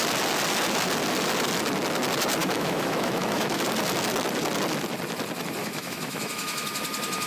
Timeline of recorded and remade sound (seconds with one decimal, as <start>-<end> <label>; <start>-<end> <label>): 0.0-2.4 recorded; 2.4-3.6 remade; 3.6-5.6 recorded; 5.6-6.7 remade; 6.7-7.3 recorded